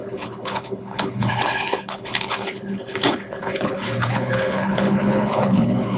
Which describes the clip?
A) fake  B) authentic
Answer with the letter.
A